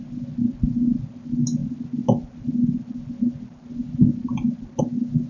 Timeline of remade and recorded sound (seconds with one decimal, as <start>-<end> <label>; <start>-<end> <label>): 0.0-5.3 recorded